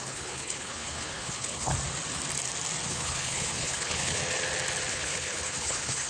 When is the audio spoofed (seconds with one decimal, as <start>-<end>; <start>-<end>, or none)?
0.0-1.7; 2.9-4.2; 4.9-6.1